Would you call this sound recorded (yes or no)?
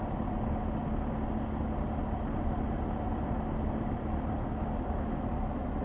yes